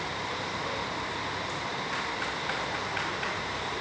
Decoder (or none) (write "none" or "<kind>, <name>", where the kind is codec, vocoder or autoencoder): vocoder, BigVGAN v2